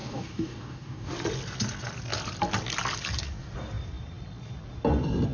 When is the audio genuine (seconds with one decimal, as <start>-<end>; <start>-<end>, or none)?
1.1-5.3